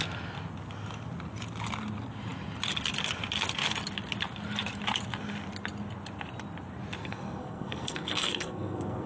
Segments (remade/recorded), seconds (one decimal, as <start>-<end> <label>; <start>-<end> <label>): 0.0-7.0 recorded; 7.0-9.1 remade